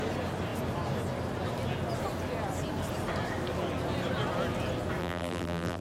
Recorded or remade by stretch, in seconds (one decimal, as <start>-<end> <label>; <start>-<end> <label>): 0.0-5.0 recorded; 5.0-5.8 remade